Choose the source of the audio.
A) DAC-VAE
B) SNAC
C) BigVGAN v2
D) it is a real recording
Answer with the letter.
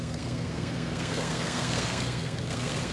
B